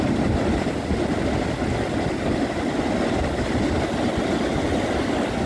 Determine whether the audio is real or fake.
real